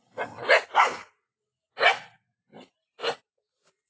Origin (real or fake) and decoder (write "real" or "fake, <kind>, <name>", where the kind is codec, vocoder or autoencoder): real